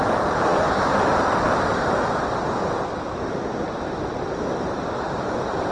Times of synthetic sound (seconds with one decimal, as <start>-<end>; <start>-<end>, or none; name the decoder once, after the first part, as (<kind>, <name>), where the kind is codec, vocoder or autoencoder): none